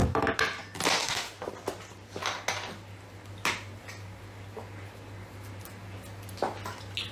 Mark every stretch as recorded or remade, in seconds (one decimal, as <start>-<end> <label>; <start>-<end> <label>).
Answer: 0.0-1.0 recorded; 1.0-1.5 remade; 1.5-7.1 recorded